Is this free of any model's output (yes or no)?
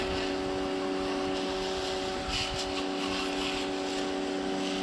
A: yes